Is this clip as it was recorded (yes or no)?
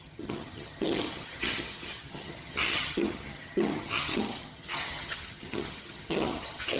no